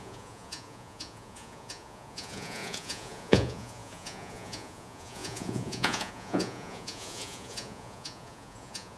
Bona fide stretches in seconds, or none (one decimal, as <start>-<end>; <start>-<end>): none